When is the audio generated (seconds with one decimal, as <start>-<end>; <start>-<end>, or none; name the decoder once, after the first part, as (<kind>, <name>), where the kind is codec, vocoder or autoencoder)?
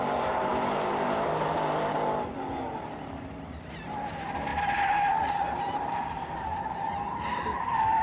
0.0-4.5 (vocoder, BigVGAN v2); 5.2-8.0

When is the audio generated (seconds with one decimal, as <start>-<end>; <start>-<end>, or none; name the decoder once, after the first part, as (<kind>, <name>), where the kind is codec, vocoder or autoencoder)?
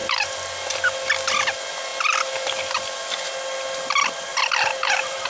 4.3-5.3 (vocoder, BigVGAN v2)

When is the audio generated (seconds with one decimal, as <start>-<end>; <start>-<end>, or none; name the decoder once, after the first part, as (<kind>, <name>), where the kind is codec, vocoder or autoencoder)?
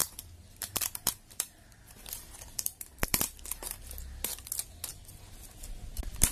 0.0-3.8 (vocoder, BigVGAN v2)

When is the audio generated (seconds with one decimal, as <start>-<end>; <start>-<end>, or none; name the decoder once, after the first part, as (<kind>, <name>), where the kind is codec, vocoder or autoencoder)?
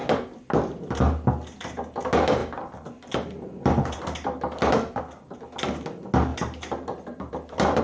2.4-4.7 (vocoder, BigVGAN v2); 6.3-7.8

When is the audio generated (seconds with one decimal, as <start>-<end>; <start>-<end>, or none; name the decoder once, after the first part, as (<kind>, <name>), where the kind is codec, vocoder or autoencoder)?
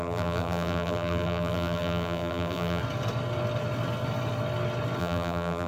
0.0-2.8 (vocoder, BigVGAN v2); 5.0-5.7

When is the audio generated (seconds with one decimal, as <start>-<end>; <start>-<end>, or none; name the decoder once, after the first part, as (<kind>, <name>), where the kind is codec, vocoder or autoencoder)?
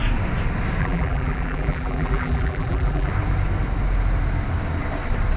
0.8-3.1 (vocoder, BigVGAN v2)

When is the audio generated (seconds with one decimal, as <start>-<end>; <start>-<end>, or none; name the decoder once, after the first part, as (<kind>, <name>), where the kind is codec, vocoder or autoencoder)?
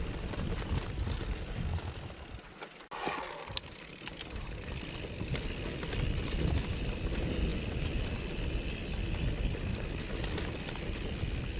none